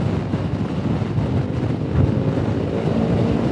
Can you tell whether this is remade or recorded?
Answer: recorded